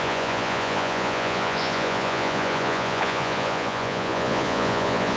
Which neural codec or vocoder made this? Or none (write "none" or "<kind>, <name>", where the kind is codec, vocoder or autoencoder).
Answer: vocoder, Vocos